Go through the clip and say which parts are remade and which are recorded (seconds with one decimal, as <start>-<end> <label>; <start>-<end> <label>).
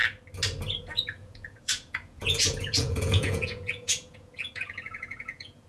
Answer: 0.0-0.8 recorded; 0.8-5.7 remade